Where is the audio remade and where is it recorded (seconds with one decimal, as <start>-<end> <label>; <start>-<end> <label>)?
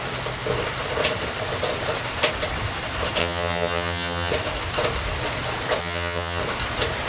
0.0-3.2 recorded; 3.2-4.3 remade; 4.3-5.8 recorded; 5.8-6.4 remade; 6.4-7.1 recorded